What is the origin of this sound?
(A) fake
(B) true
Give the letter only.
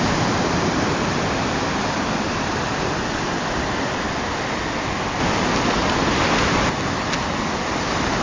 B